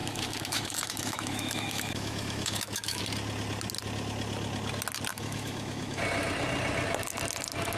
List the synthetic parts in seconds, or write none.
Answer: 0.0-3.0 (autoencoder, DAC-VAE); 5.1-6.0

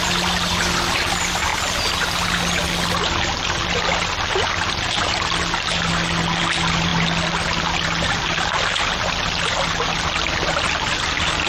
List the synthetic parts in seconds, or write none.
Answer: none

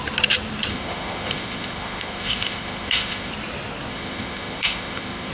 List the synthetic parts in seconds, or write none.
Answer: 0.7-3.3 (autoencoder, DAC-VAE); 3.9-5.3

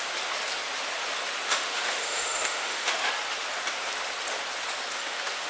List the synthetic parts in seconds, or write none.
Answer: 1.5-3.1 (autoencoder, DAC-VAE); 4.9-5.5

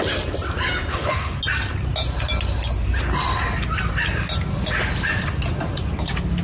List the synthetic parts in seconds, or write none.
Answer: 0.9-1.4 (autoencoder, DAC-VAE)

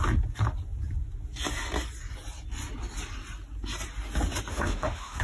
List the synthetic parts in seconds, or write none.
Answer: 4.5-5.2 (autoencoder, DAC-VAE)